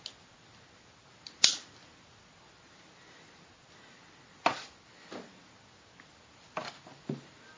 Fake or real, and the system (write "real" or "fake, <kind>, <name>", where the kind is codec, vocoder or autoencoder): real